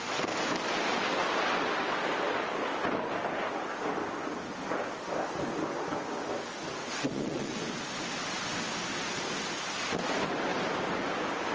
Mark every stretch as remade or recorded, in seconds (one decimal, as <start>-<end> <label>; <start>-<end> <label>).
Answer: 0.0-6.8 recorded; 6.8-7.6 remade; 7.6-11.5 recorded